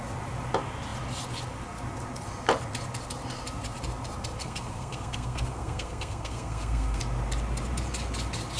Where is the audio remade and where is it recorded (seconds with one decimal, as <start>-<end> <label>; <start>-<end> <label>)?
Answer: 0.0-4.4 recorded; 4.4-7.0 remade; 7.0-8.6 recorded